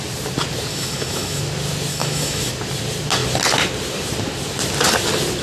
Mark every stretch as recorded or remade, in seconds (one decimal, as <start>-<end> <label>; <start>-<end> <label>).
0.0-0.7 recorded; 0.7-1.4 remade; 1.4-1.9 recorded; 1.9-2.5 remade; 2.5-5.4 recorded